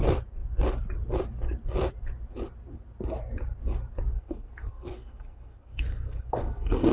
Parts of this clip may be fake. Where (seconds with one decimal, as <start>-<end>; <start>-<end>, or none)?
4.1-6.9